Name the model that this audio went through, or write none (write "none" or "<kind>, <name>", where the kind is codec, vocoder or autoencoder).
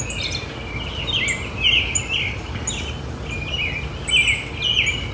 none